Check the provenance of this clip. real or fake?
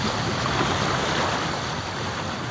real